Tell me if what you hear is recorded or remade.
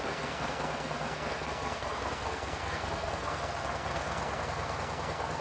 remade